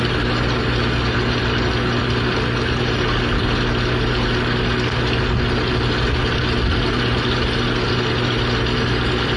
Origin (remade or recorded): recorded